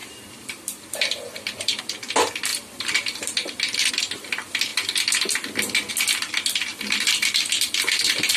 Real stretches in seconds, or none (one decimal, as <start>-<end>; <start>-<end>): 1.8-2.5; 3.9-6.7